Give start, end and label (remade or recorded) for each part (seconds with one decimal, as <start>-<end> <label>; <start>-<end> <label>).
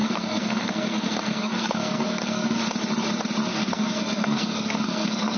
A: 0.0-2.6 remade; 2.6-3.5 recorded; 3.5-5.4 remade